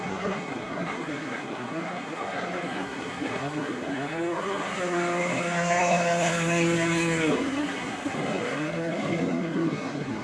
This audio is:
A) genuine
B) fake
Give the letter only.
B